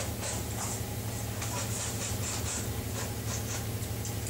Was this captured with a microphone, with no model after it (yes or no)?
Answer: yes